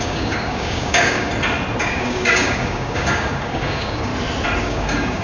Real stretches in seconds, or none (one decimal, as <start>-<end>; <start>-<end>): 1.3-1.8; 4.1-4.6